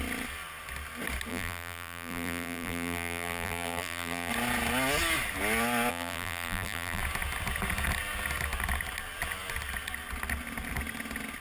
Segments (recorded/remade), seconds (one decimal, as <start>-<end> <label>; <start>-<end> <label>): 0.0-1.3 recorded; 1.3-4.3 remade; 4.3-5.9 recorded; 5.9-7.0 remade; 7.0-11.4 recorded